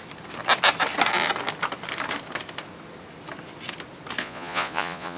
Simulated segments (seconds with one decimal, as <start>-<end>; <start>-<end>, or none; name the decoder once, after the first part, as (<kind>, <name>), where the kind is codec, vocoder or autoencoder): 4.2-5.2 (vocoder, Vocos)